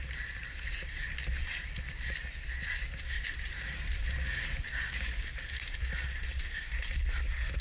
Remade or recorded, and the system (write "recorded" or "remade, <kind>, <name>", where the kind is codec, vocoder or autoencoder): recorded